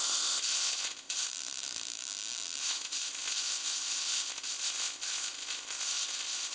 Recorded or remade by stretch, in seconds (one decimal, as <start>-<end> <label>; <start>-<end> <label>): 0.0-1.3 remade; 1.3-2.6 recorded; 2.6-6.5 remade